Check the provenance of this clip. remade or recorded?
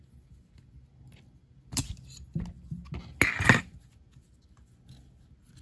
recorded